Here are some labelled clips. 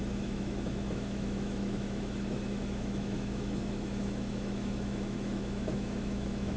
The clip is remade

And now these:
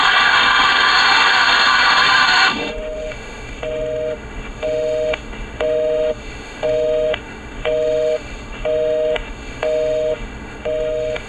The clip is remade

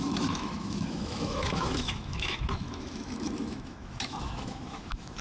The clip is remade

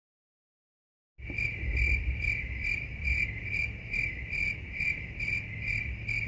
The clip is recorded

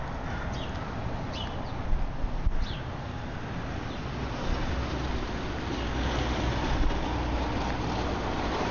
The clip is recorded